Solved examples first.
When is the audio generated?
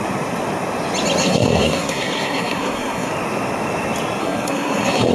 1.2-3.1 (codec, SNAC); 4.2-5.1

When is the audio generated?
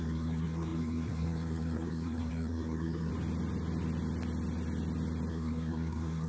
0.0-3.1 (codec, SNAC); 5.3-6.3